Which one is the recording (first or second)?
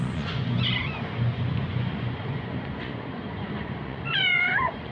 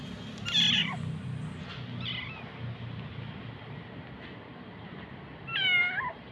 second